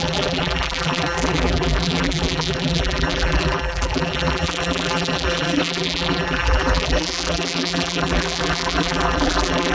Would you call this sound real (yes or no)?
no